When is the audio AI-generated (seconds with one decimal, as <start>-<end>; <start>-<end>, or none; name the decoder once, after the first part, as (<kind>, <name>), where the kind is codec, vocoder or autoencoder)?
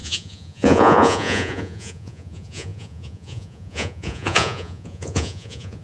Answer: 0.0-5.8 (vocoder, Vocos)